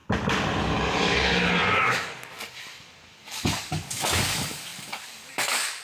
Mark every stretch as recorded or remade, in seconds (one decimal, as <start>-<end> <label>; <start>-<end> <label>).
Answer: 0.0-0.6 recorded; 0.6-5.8 remade